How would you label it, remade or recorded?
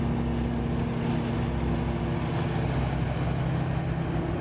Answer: recorded